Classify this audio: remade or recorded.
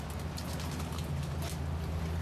recorded